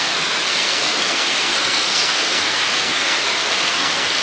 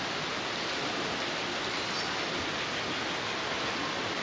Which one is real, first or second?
second